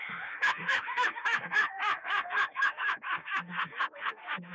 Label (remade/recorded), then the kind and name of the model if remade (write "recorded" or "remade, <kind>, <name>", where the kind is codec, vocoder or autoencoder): remade, autoencoder, DAC-VAE